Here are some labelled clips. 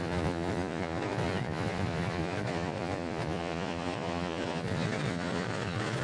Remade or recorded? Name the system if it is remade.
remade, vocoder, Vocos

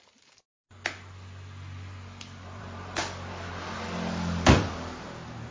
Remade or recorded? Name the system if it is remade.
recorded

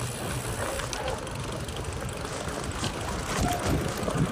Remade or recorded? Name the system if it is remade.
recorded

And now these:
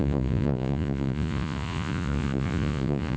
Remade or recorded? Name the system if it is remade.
remade, vocoder, Vocos